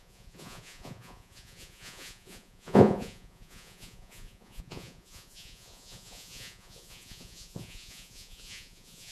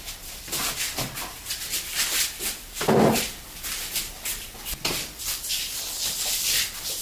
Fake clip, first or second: first